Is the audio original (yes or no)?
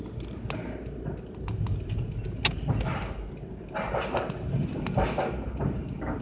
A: yes